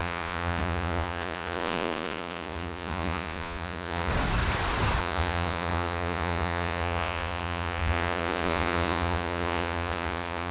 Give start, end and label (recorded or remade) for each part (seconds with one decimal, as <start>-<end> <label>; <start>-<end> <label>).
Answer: 0.0-4.1 remade; 4.1-5.0 recorded; 5.0-10.5 remade